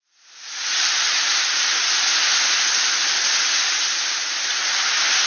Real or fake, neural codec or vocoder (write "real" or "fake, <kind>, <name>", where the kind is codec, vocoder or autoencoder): real